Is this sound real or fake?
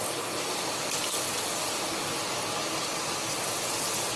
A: real